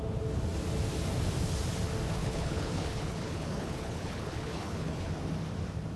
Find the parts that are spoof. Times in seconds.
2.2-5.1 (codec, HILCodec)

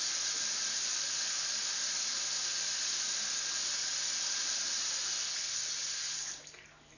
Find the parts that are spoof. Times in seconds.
none

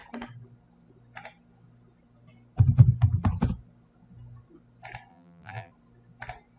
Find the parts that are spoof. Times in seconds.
5.1-5.7 (vocoder, BigVGAN v2)

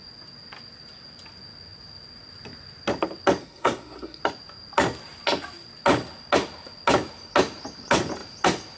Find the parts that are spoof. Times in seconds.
3.4-4.2 (codec, SNAC)

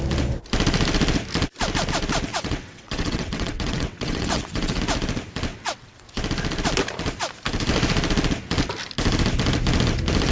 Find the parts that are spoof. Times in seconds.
2.3-4.8 (vocoder, WaveNeXt); 5.5-6.0